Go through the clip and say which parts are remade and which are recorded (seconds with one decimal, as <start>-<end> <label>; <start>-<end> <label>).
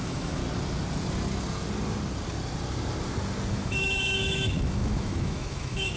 0.0-0.4 remade; 0.4-3.5 recorded; 3.5-6.0 remade